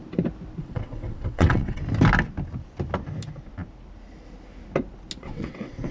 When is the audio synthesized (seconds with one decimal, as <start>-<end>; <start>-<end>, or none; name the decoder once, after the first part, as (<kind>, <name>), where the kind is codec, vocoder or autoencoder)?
0.6-1.8 (vocoder, WaveNeXt); 5.2-5.9